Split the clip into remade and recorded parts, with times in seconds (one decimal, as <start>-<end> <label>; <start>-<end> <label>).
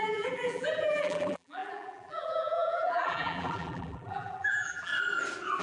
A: 0.0-4.9 remade; 4.9-5.6 recorded